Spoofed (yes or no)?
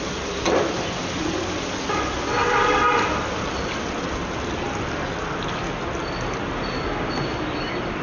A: no